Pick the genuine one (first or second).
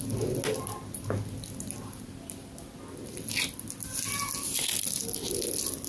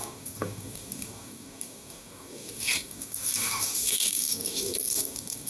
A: first